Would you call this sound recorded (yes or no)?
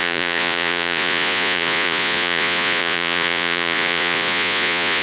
no